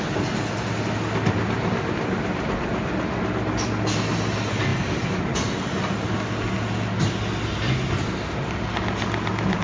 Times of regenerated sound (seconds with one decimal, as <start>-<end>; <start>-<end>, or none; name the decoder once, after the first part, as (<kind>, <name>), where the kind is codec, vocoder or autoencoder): none